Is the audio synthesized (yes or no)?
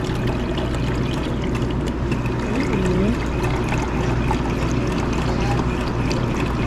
no